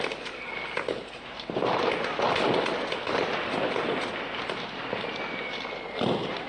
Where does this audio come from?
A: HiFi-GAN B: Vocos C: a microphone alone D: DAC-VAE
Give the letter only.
C